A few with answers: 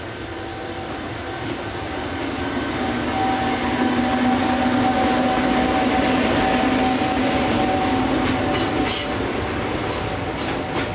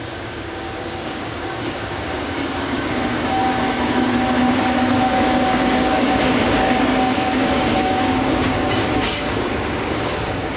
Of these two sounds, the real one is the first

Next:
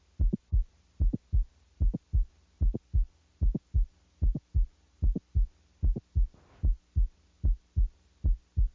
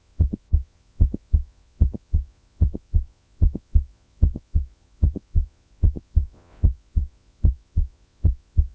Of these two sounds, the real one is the first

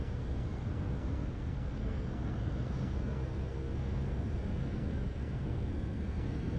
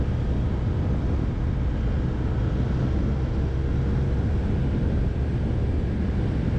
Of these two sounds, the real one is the second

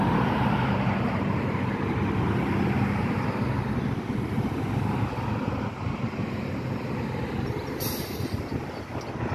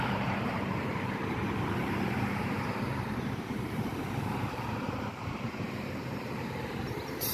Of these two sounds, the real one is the first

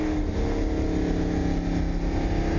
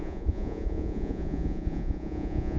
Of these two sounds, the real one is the first